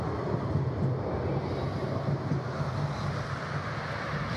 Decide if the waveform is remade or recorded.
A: recorded